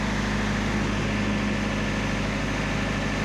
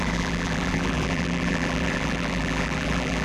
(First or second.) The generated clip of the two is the second